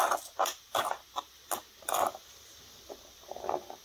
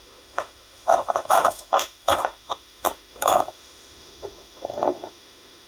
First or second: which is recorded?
first